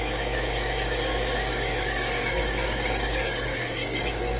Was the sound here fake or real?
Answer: fake